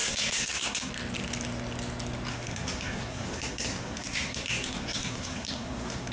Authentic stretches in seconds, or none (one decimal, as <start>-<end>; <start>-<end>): 0.9-2.3